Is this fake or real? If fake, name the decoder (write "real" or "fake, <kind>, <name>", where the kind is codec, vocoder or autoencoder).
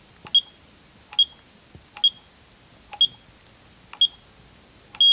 real